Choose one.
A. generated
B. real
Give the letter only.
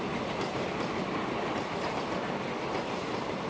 B